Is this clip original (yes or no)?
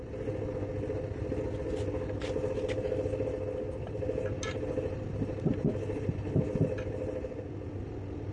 yes